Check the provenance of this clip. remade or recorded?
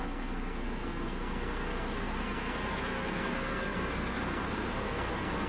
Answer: remade